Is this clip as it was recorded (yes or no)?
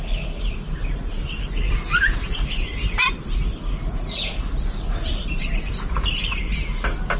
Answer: yes